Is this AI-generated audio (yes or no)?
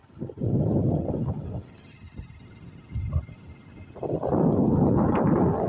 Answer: no